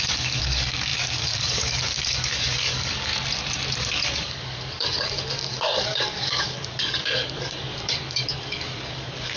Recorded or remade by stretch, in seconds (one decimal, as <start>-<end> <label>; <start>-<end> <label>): 0.0-3.1 remade; 3.1-3.8 recorded; 3.8-9.4 remade